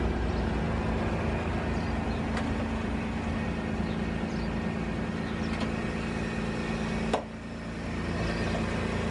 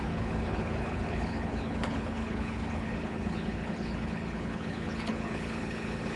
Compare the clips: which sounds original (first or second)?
first